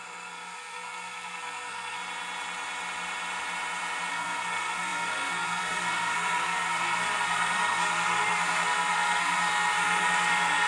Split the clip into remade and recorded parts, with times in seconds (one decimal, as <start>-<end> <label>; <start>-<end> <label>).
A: 0.0-2.0 remade; 2.0-4.1 recorded; 4.1-10.7 remade